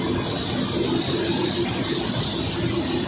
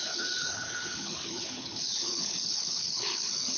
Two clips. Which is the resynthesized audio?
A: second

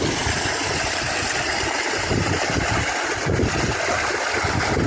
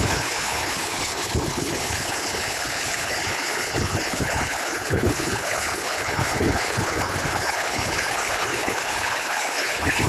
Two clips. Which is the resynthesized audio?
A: second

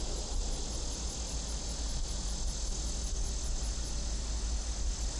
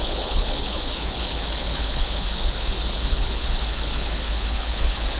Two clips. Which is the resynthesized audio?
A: second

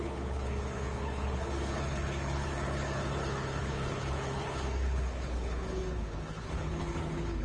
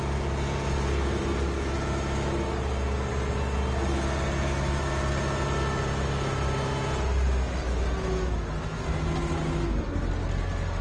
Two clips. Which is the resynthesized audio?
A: first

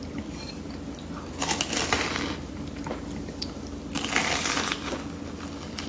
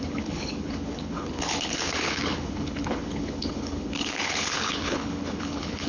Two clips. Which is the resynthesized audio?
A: second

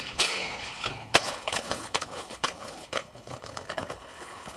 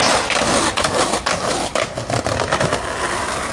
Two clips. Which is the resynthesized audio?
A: first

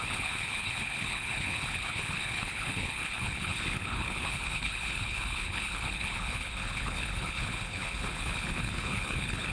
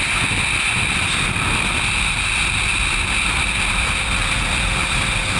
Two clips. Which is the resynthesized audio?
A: first